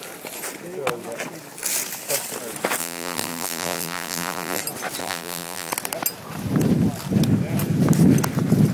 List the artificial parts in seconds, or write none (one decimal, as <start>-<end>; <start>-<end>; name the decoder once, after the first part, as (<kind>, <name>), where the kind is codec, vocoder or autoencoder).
2.8-4.6 (vocoder, BigVGAN v2); 5.0-5.7